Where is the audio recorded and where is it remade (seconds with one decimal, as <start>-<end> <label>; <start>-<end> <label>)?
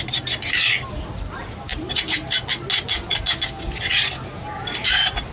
0.0-5.3 recorded